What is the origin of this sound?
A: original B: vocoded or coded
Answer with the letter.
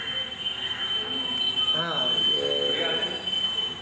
A